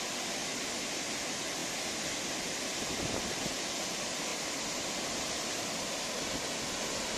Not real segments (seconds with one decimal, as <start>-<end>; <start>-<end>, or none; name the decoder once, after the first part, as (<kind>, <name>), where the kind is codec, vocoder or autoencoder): 0.4-0.9 (vocoder, BigVGAN v2); 4.3-5.9